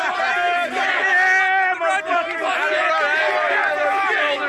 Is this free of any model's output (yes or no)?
yes